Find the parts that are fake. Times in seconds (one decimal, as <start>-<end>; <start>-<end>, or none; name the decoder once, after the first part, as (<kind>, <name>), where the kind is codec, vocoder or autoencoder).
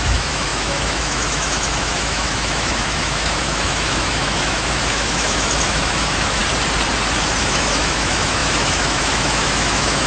0.0-6.4 (autoencoder, DAC-VAE); 7.4-10.1